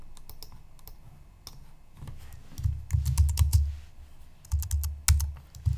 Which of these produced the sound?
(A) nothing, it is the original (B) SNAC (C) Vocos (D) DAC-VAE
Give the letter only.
A